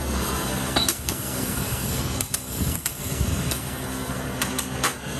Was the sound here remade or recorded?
remade